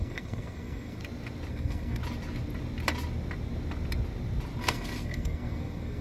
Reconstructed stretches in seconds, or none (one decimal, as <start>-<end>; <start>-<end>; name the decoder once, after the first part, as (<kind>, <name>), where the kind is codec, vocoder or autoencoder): 0.0-1.0 (codec, SNAC); 1.5-2.0; 4.6-6.0